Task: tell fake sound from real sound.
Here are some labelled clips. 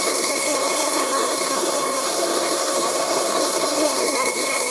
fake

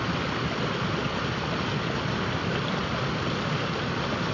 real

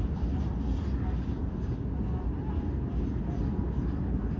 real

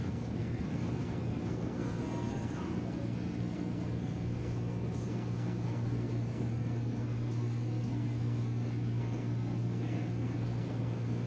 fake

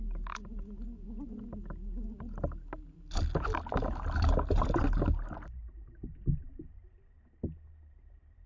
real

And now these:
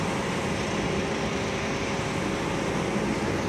real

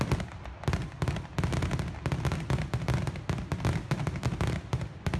real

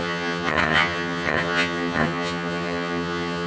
fake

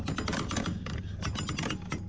real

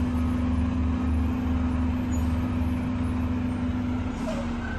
real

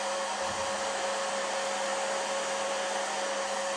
real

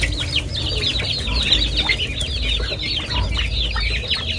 real